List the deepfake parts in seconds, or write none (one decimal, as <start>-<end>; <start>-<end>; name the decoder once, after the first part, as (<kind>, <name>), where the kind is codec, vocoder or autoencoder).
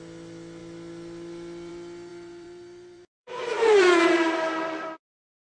2.1-5.5 (vocoder, BigVGAN v2)